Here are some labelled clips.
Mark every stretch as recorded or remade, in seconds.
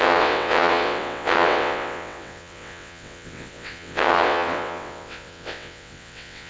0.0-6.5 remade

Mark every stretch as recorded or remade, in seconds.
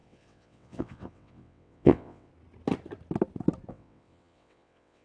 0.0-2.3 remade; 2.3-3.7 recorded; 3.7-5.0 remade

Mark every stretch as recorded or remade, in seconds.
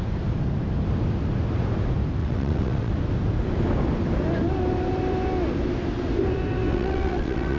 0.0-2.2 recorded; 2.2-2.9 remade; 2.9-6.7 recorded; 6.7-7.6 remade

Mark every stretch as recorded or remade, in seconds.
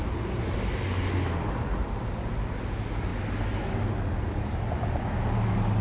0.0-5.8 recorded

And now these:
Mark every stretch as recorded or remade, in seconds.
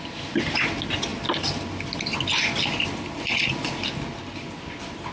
0.0-5.1 recorded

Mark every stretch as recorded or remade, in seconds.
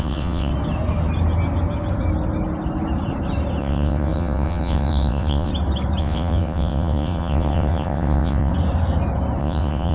0.0-0.5 remade; 0.5-3.6 recorded; 3.6-5.5 remade; 5.5-6.0 recorded; 6.0-8.5 remade; 8.5-9.4 recorded; 9.4-9.9 remade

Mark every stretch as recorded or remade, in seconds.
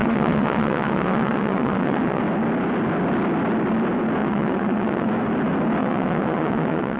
0.0-2.2 remade; 2.2-4.2 recorded; 4.2-5.1 remade; 5.1-5.8 recorded; 5.8-7.0 remade